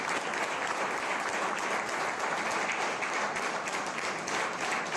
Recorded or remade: recorded